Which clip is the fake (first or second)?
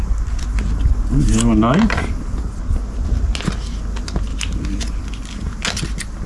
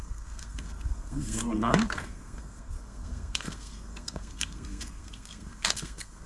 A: second